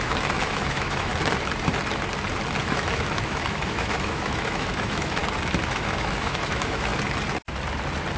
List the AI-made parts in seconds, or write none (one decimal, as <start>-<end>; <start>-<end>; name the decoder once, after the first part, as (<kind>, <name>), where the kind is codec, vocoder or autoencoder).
0.0-1.1 (autoencoder, DAC-VAE); 2.6-5.2; 5.7-6.9